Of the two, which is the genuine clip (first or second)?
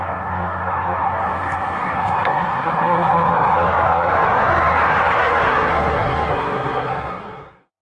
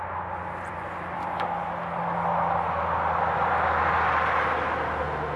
second